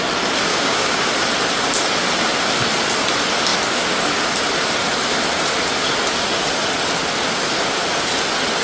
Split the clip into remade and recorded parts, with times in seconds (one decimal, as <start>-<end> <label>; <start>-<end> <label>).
0.0-0.5 recorded; 0.5-1.1 remade; 1.1-8.6 recorded